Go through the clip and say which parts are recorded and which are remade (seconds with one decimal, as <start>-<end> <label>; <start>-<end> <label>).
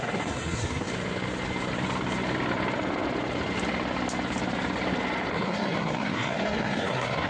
0.0-0.9 remade; 0.9-5.3 recorded; 5.3-7.3 remade